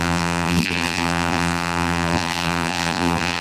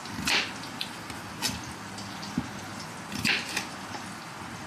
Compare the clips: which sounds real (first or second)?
second